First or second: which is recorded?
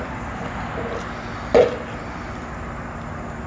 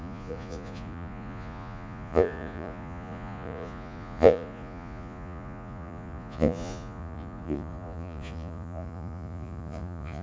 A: first